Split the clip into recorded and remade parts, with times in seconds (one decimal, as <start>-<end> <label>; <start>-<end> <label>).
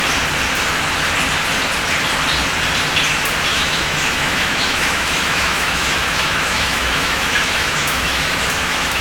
0.0-3.5 recorded; 3.5-9.0 remade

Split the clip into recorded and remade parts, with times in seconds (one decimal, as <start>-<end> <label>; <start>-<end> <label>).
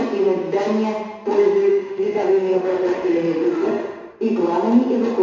0.0-1.7 recorded; 1.7-4.1 remade; 4.1-5.2 recorded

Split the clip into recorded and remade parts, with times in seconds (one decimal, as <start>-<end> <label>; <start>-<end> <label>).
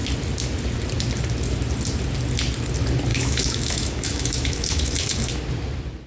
0.0-3.1 recorded; 3.1-5.3 remade; 5.3-6.1 recorded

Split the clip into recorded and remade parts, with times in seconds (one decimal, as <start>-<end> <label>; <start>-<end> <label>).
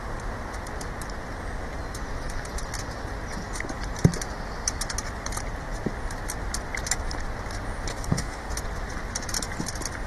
0.0-7.9 recorded; 7.9-8.5 remade; 8.5-10.1 recorded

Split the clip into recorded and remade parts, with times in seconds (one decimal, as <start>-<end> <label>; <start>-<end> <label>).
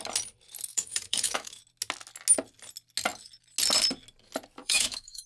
0.0-0.7 recorded; 0.7-1.6 remade; 1.6-4.6 recorded; 4.6-5.3 remade